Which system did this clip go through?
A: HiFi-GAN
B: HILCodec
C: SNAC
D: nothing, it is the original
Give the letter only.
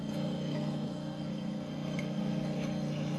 C